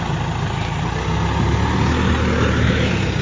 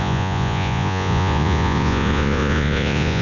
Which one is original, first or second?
first